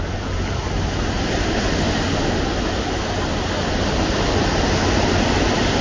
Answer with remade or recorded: recorded